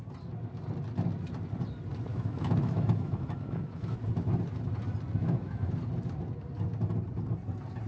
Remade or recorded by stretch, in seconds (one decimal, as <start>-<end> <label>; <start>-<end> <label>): 0.0-2.1 recorded; 2.1-4.0 remade; 4.0-5.2 recorded; 5.2-5.7 remade; 5.7-7.9 recorded